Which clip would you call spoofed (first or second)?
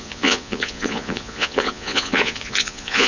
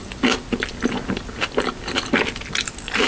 first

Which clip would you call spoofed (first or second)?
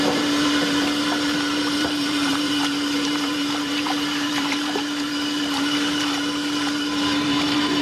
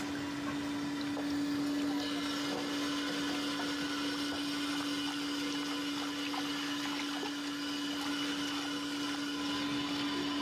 first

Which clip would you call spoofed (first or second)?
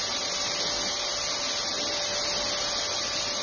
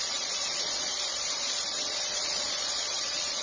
second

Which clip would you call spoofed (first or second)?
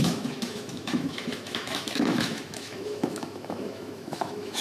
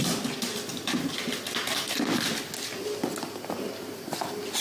first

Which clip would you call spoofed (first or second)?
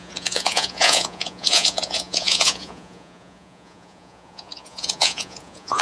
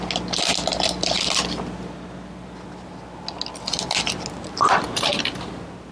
first